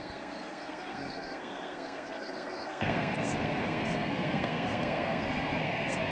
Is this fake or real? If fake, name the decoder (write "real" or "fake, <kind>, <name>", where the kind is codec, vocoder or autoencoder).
fake, codec, SNAC